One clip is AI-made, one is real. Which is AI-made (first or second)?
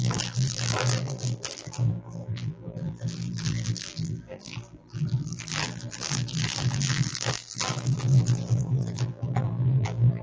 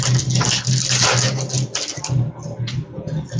first